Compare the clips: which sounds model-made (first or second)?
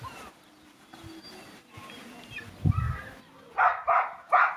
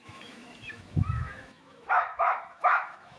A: second